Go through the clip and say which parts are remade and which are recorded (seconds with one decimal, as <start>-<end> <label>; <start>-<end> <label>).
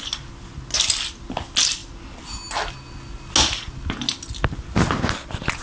0.0-5.6 recorded